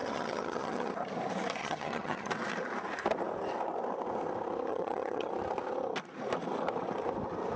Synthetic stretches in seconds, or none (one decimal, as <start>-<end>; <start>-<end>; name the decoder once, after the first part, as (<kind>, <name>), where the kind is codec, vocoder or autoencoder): 0.0-0.9 (vocoder, HiFi-GAN); 1.6-2.3; 4.7-5.3